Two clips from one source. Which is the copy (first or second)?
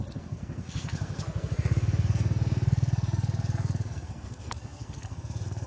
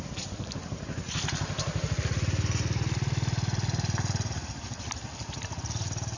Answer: first